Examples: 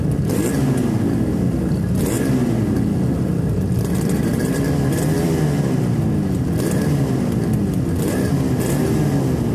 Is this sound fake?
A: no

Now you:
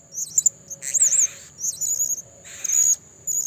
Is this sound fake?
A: no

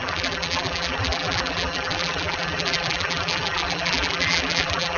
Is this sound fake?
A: yes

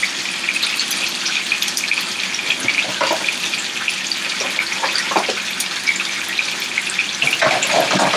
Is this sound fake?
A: no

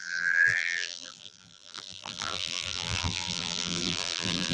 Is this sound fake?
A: yes